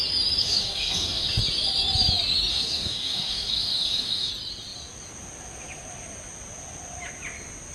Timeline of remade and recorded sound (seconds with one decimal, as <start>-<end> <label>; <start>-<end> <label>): 0.0-0.4 recorded; 0.4-1.4 remade; 1.4-2.5 recorded; 2.5-4.3 remade; 4.3-7.7 recorded